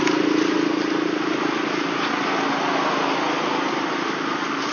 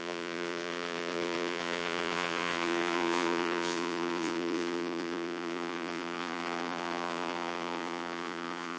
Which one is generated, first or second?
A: second